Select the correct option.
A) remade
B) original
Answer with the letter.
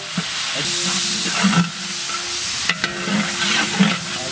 B